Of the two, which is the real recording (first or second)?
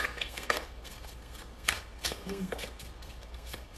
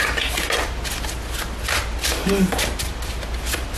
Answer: second